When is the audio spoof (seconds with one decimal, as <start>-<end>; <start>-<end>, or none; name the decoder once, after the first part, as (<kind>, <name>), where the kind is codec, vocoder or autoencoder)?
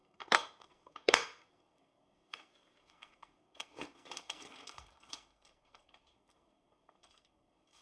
0.0-7.8 (codec, SNAC)